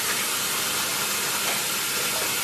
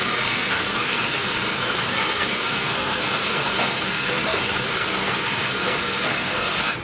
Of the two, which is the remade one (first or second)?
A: second